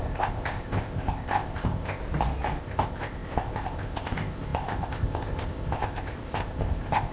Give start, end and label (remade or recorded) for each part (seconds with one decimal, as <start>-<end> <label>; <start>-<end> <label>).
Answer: 0.0-2.0 remade; 2.0-2.6 recorded; 2.6-7.1 remade